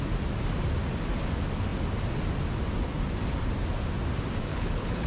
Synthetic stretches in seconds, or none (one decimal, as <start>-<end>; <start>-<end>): 4.5-5.1

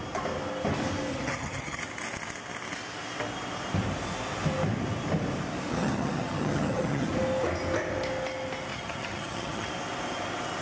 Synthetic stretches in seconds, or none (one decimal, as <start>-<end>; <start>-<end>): 1.1-1.8; 5.7-7.1; 8.7-9.7

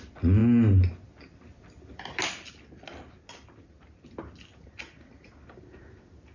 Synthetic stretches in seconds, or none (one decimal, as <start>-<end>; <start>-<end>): none

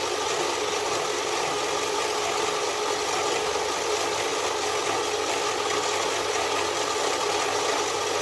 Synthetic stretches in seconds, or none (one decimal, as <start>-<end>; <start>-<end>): none

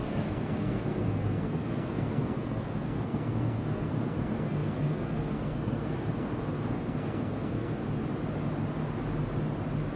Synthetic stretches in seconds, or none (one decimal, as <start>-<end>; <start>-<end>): 0.0-7.8

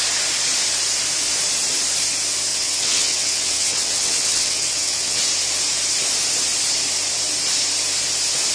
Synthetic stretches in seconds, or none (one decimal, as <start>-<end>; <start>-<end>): 2.5-5.2

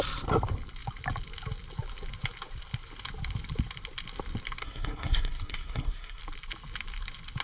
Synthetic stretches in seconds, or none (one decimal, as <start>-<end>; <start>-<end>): 4.6-6.2